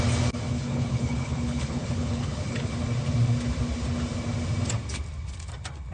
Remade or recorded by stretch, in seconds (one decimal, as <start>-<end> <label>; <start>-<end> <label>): 0.0-0.5 recorded; 0.5-2.7 remade; 2.7-5.9 recorded

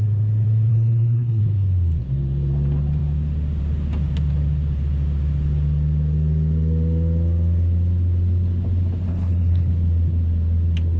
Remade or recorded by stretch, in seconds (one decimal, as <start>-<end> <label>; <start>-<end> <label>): 0.0-0.7 recorded; 0.7-1.4 remade; 1.4-9.1 recorded; 9.1-9.7 remade; 9.7-11.0 recorded

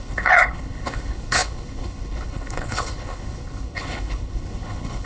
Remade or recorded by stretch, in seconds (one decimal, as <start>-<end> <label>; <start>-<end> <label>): 0.0-5.0 remade

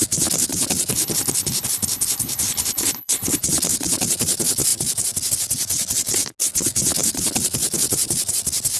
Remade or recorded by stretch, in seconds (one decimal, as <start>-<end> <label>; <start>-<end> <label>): 0.0-0.9 recorded; 0.9-3.4 remade; 3.4-8.8 recorded

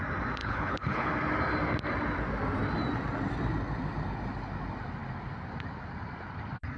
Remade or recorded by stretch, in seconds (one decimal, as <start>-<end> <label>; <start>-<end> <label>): 0.0-0.4 recorded; 0.4-1.1 remade; 1.1-6.8 recorded